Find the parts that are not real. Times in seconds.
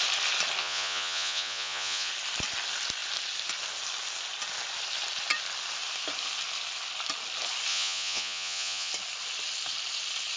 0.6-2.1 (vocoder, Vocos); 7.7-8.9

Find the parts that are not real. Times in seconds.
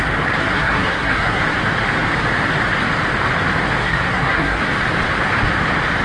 0.4-1.4 (codec, SNAC); 3.8-4.6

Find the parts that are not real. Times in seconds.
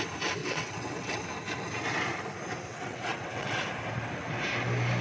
0.4-1.2 (vocoder, WaveNeXt); 2.7-3.6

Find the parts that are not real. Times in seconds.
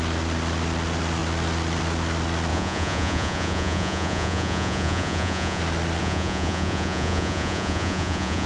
2.5-5.6 (vocoder, Vocos); 6.0-8.5